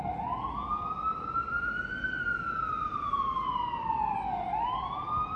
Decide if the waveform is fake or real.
real